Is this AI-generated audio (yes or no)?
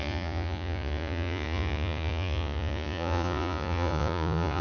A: yes